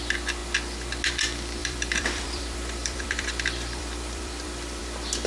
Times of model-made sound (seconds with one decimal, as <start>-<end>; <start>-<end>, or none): 1.6-4.8

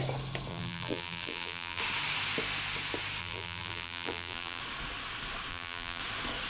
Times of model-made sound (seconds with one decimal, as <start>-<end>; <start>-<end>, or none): 0.5-1.8; 3.2-4.6; 5.5-6.0

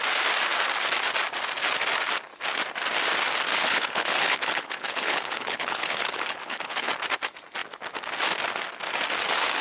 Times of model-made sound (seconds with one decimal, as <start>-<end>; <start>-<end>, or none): 3.5-6.9

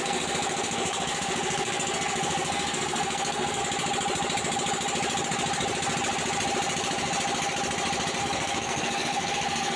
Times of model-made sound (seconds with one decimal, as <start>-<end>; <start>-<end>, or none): 0.0-3.6; 8.2-9.8